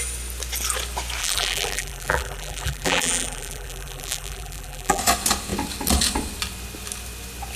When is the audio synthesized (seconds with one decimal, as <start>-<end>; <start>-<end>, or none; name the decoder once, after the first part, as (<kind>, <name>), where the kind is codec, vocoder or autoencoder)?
1.2-5.0 (vocoder, BigVGAN v2)